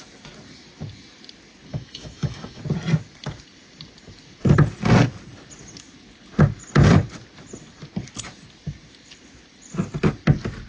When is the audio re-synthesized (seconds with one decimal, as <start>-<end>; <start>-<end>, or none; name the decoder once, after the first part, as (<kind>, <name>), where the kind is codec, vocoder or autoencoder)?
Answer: 1.7-2.6 (autoencoder, DAC-VAE)